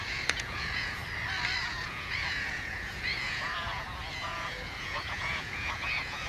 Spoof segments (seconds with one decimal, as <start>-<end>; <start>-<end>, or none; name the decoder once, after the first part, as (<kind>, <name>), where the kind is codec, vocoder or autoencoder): 0.0-1.0 (vocoder, Vocos); 1.6-6.3